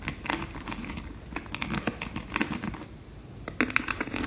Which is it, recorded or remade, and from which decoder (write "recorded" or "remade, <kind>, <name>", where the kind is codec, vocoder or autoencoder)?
recorded